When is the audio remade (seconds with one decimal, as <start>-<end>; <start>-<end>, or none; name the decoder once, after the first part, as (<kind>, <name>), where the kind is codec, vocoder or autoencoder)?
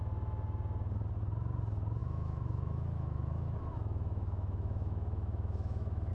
2.0-6.1 (autoencoder, DAC-VAE)